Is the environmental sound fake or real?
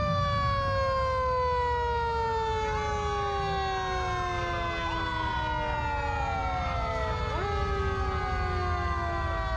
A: real